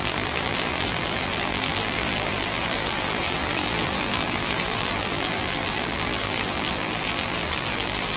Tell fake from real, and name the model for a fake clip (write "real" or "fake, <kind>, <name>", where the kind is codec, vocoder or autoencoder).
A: fake, vocoder, BigVGAN v2